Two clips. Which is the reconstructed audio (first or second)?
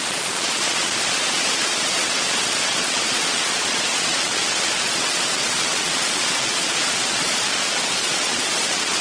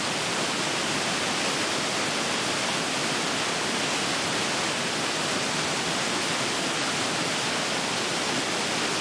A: first